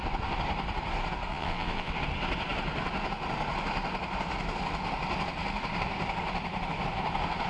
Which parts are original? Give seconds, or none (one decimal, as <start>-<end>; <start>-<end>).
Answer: 0.0-1.3; 1.9-7.5